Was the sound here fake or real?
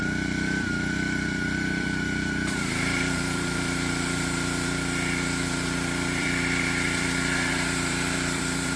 fake